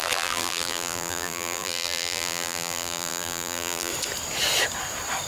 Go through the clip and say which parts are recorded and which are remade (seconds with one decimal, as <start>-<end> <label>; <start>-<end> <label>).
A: 0.0-3.9 remade; 3.9-5.3 recorded